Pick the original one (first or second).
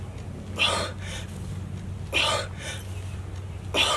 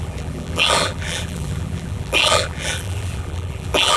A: first